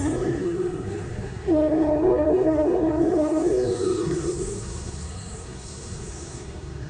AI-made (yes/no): yes